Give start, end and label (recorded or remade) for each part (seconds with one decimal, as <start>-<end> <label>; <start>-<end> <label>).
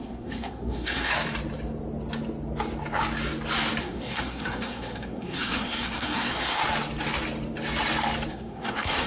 0.0-1.1 remade; 1.1-3.8 recorded; 3.8-6.6 remade; 6.6-8.3 recorded; 8.3-9.1 remade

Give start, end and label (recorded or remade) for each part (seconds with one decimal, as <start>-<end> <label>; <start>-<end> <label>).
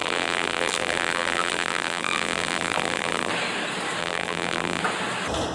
0.0-3.3 remade; 3.3-4.0 recorded; 4.0-4.8 remade; 4.8-5.5 recorded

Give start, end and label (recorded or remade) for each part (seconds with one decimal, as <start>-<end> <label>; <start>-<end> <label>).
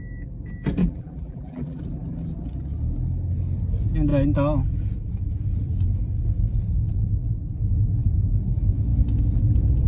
0.0-0.8 recorded; 0.8-1.8 remade; 1.8-9.9 recorded